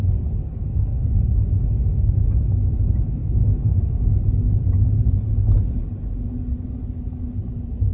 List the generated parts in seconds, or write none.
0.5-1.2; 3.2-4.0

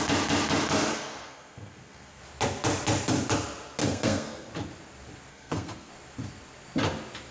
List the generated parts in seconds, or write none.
0.9-2.2; 3.8-4.5; 5.3-5.9

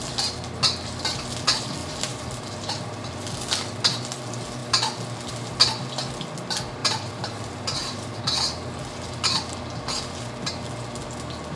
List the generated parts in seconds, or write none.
1.8-2.8; 6.8-8.2

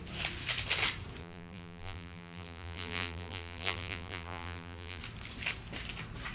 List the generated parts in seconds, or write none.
1.2-5.0

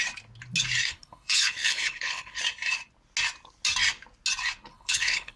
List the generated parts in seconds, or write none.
0.9-2.4; 4.7-5.4

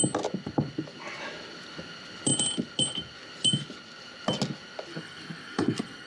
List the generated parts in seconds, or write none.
4.9-6.1

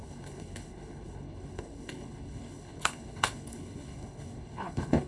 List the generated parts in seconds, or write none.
0.0-5.1